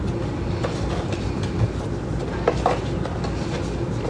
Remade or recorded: recorded